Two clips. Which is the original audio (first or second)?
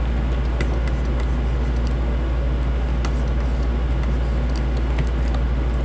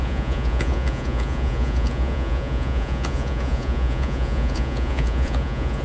first